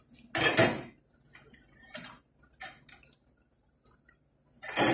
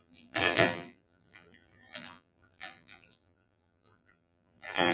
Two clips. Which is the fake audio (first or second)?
second